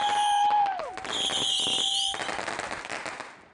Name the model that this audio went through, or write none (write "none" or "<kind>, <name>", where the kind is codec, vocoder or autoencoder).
none